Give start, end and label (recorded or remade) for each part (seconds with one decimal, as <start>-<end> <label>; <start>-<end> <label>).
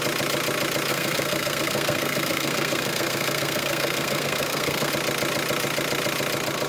0.0-0.9 recorded; 0.9-4.9 remade; 4.9-6.7 recorded